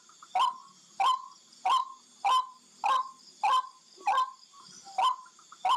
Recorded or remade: recorded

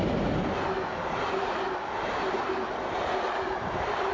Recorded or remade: recorded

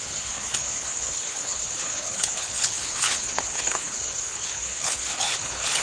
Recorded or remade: remade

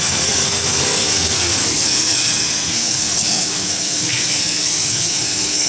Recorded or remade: remade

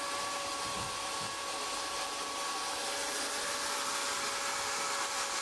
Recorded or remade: recorded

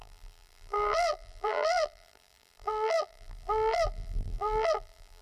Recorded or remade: remade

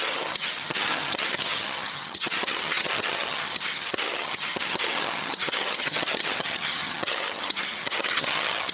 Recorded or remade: remade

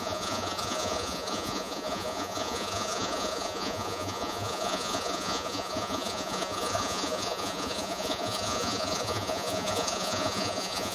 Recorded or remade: remade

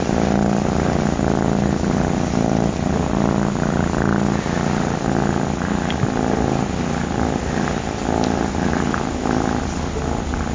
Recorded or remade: recorded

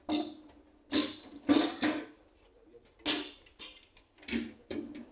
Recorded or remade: recorded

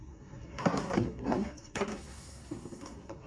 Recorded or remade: remade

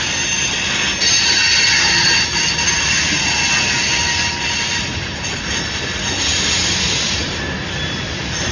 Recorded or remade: recorded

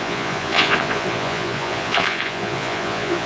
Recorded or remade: remade